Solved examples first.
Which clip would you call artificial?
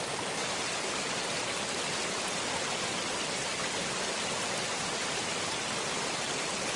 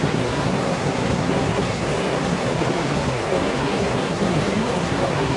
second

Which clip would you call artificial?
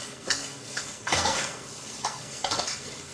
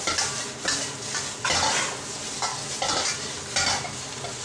first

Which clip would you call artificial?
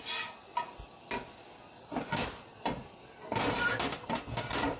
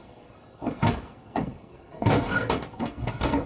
second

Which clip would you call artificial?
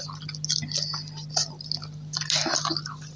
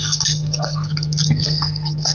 second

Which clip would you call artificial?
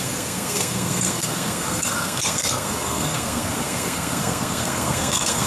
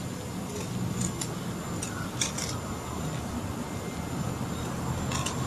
first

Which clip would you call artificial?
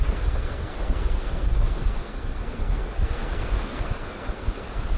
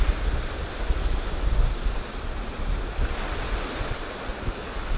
first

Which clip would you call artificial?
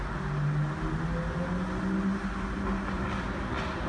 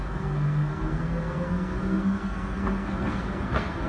second